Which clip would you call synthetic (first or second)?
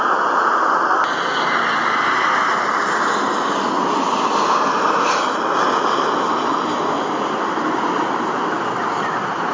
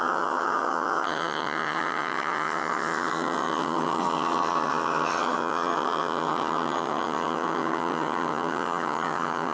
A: second